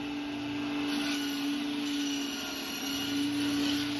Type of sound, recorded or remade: recorded